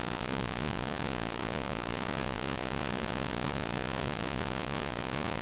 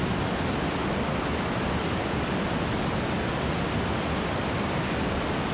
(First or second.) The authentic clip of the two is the second